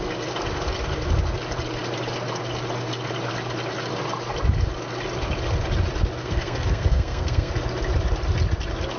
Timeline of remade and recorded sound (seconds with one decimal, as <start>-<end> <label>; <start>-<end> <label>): 0.0-6.2 recorded; 6.2-7.5 remade; 7.5-9.0 recorded